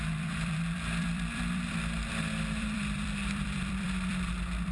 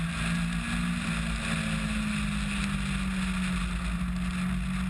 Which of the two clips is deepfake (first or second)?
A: first